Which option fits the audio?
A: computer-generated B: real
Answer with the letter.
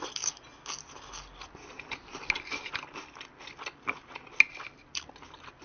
B